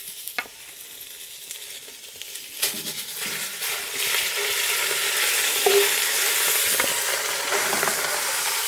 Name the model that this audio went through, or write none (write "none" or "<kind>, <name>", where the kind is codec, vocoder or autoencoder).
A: none